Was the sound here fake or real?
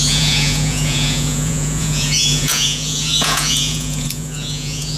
fake